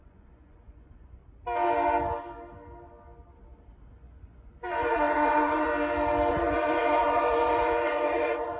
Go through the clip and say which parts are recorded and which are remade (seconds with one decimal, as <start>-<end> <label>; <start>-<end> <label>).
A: 0.0-1.2 remade; 1.2-3.9 recorded; 3.9-5.7 remade; 5.7-6.3 recorded; 6.3-8.6 remade